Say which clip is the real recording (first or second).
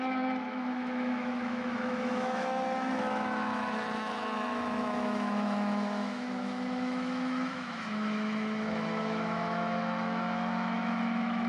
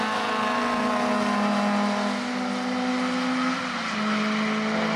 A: second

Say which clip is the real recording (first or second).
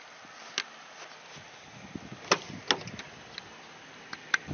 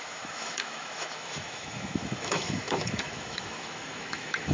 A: first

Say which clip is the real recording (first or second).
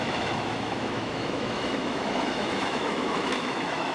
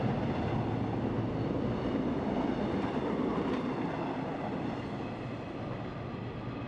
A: second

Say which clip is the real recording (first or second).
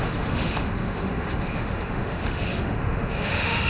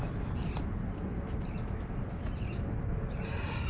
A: second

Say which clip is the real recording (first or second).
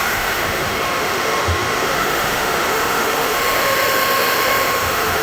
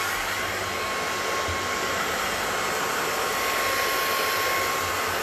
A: second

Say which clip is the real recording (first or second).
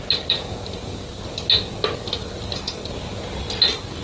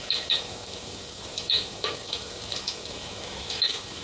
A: first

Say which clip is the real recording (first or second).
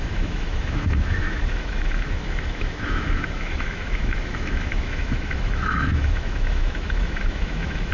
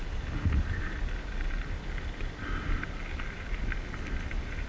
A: second